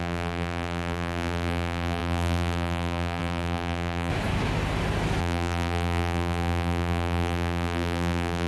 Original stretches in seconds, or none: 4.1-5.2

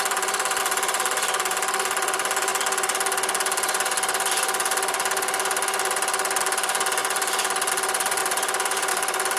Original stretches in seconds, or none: 2.5-6.4; 7.0-7.7; 8.2-8.9

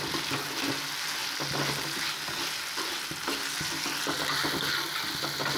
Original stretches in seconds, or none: 0.0-5.6

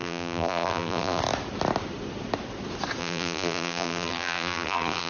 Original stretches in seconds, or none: 1.2-3.0

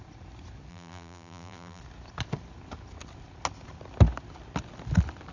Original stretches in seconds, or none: 0.0-0.7; 1.8-5.3